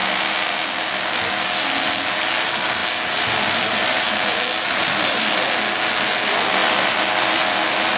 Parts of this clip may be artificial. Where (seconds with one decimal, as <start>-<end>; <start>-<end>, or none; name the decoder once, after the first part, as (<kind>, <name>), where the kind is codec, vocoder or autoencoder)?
none